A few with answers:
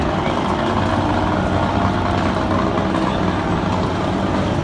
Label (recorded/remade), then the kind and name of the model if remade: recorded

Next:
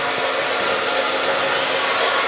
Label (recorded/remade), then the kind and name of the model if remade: recorded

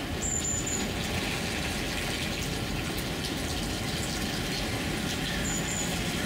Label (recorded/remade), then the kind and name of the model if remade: recorded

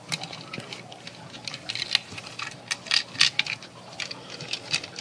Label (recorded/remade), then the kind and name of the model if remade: recorded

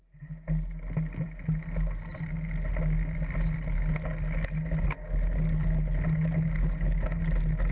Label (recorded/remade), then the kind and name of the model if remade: recorded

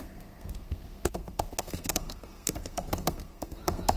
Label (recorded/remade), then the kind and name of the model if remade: remade, codec, SNAC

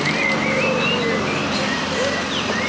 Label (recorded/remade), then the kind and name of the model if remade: recorded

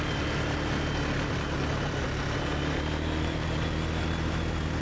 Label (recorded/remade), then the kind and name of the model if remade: recorded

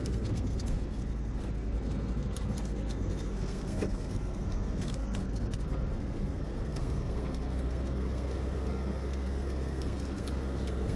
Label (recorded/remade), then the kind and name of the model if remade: remade, codec, SNAC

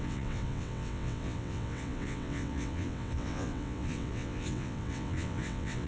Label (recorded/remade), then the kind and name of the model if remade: remade, vocoder, WaveNeXt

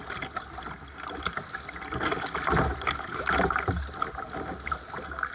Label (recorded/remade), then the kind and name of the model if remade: recorded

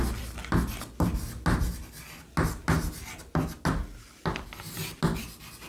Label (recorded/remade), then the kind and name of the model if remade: recorded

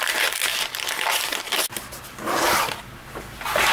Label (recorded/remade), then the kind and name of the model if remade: recorded